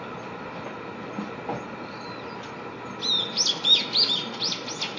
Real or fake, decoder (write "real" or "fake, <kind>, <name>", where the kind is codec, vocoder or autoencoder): real